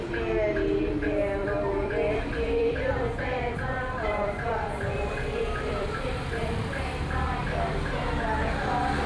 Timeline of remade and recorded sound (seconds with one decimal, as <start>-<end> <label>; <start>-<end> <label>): 0.0-1.4 recorded; 1.4-6.0 remade; 6.0-9.1 recorded